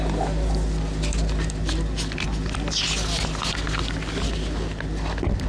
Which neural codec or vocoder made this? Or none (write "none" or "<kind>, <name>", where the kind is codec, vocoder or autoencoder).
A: none